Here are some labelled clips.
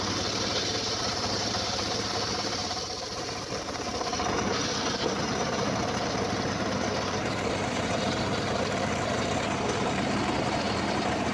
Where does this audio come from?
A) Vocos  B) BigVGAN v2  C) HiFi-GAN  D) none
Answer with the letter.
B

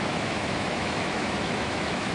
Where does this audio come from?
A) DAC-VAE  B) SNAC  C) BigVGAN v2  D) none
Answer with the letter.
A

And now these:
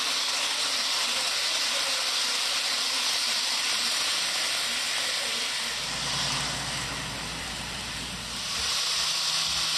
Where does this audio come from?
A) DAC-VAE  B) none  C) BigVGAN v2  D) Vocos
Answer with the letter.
B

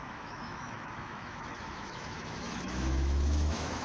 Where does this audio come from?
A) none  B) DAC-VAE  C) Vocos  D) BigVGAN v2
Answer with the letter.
B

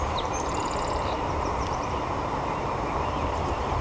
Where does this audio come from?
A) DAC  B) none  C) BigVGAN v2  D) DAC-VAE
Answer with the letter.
C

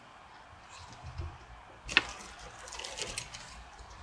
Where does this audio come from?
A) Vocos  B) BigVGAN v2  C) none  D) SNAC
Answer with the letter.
C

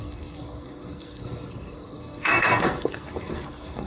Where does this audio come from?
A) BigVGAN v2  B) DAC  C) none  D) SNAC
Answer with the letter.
D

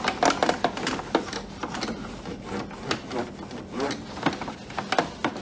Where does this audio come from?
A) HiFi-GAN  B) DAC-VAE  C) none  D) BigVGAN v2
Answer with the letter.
C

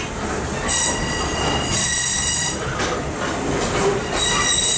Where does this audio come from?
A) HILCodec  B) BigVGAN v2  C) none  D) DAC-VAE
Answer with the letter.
C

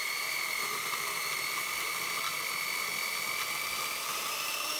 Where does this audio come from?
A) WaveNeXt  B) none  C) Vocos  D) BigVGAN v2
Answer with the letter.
B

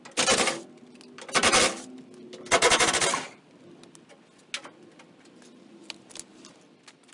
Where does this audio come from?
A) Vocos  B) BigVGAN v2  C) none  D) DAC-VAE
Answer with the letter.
C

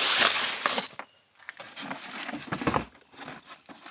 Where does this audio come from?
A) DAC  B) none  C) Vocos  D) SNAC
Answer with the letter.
B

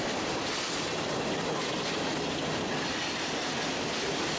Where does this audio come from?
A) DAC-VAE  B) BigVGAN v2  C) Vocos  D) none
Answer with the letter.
D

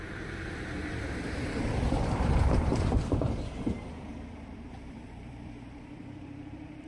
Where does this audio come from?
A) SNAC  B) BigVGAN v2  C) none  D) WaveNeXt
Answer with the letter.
B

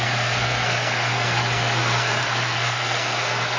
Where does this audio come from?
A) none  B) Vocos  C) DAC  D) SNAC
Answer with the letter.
D